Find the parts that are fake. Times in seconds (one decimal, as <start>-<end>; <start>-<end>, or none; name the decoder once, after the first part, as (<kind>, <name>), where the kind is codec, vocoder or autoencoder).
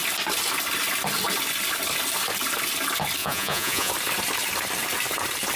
3.2-3.9 (vocoder, Vocos)